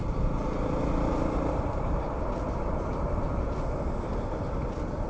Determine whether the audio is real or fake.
real